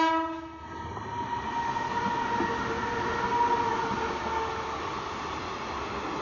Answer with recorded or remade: recorded